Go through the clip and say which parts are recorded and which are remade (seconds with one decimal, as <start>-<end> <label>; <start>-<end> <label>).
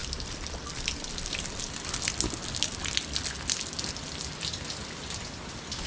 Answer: 0.0-1.6 remade; 1.6-5.9 recorded